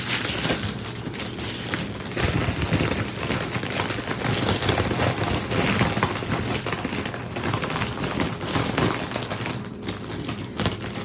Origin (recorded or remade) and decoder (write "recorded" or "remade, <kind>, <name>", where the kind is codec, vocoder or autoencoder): recorded